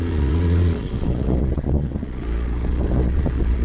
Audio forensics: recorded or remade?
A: remade